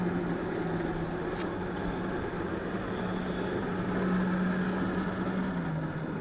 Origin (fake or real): real